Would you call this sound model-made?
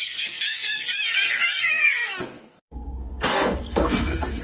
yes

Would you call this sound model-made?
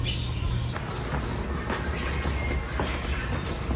no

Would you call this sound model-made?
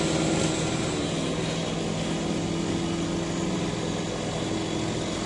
no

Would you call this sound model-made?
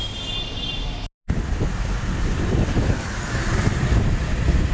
no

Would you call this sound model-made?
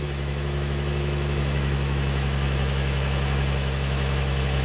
yes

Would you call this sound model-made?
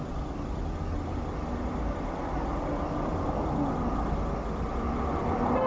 no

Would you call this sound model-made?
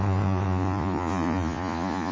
yes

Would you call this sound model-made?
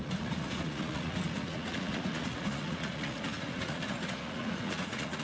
yes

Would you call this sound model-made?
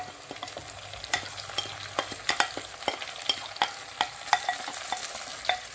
no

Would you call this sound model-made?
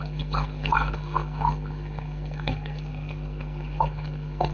yes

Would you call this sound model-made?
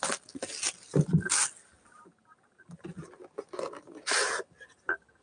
no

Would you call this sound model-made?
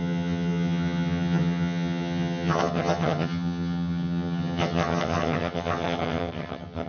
yes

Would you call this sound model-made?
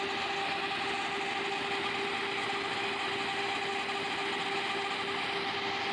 no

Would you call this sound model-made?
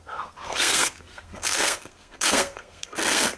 yes